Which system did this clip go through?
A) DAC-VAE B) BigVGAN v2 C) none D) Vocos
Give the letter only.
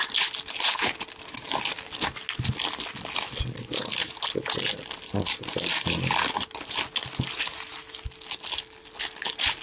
C